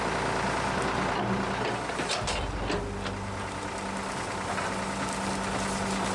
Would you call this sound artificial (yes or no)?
no